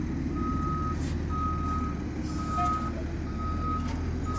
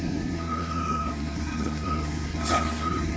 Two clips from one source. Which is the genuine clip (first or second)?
first